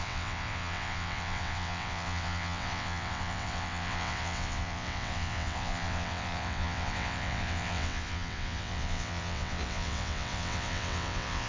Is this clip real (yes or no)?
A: no